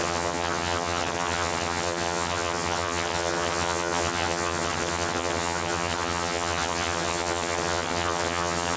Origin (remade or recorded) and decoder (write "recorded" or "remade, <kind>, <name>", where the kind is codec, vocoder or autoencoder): remade, vocoder, HiFi-GAN